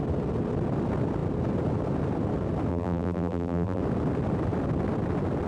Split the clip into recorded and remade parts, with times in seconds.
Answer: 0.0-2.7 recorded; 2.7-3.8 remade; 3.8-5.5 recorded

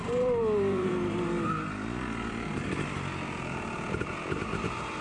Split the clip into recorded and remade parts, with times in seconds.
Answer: 0.0-0.9 remade; 0.9-3.9 recorded; 3.9-5.0 remade